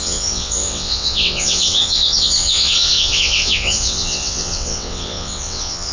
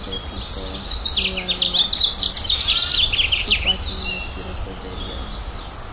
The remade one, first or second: first